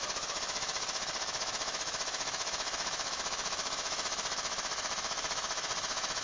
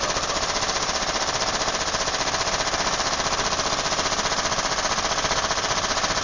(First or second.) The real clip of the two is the second